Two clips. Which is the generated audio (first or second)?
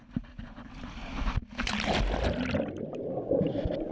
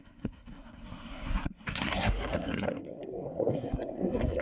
second